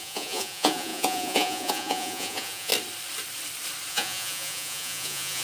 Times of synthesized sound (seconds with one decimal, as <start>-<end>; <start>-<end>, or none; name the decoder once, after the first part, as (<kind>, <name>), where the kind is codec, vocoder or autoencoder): 0.0-2.7 (vocoder, Vocos); 3.9-5.4

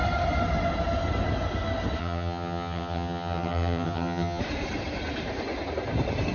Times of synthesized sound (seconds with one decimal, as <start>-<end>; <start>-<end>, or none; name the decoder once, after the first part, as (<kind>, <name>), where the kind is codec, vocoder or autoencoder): 2.0-4.4 (vocoder, HiFi-GAN)

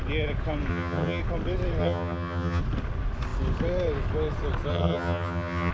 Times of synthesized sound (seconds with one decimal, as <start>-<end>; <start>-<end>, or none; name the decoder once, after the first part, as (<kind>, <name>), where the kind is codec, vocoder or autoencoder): 0.7-1.2 (vocoder, HiFi-GAN); 1.8-2.6; 4.7-5.7

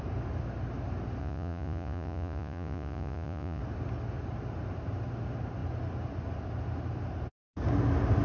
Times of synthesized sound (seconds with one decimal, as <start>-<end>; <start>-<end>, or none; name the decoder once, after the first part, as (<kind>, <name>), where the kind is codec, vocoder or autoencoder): 1.2-3.6 (vocoder, Vocos)

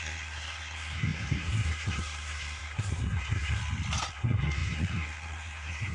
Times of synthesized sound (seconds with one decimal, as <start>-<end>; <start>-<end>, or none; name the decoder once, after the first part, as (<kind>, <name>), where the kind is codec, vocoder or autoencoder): 0.0-3.6 (codec, SNAC); 4.1-5.9